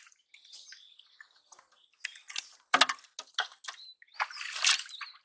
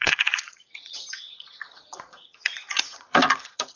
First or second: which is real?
first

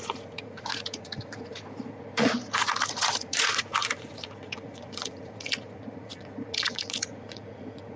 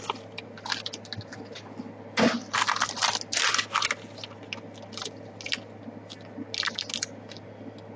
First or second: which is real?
second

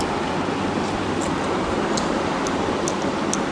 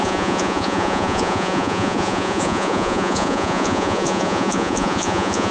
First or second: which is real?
first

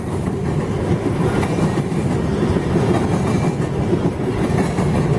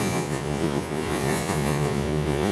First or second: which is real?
first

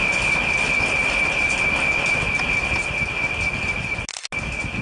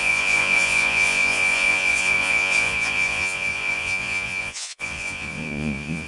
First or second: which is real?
first